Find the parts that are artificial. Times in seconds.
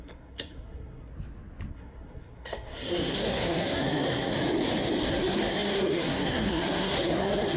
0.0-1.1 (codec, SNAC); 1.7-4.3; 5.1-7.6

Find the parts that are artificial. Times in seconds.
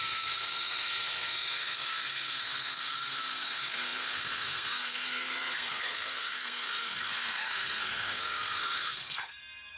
0.0-9.8 (codec, SNAC)